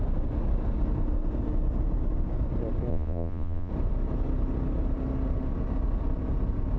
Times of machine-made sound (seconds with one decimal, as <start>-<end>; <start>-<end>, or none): 2.9-3.7